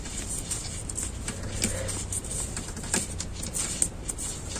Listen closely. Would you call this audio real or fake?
real